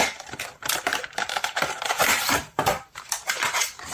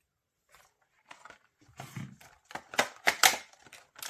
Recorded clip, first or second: second